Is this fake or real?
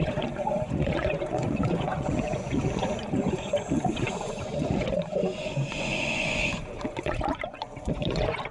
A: fake